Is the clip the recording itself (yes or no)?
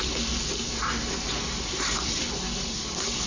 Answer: yes